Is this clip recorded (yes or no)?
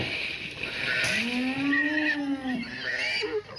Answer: yes